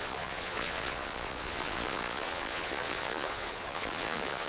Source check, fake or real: fake